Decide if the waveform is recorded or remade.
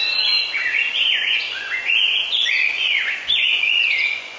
remade